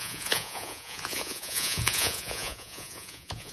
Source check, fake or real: fake